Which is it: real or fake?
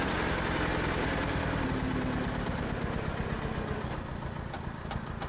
real